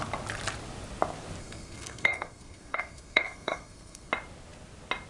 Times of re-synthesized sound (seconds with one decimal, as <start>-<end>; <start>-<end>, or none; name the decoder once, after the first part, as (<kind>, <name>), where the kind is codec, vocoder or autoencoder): 1.4-4.1 (codec, SNAC)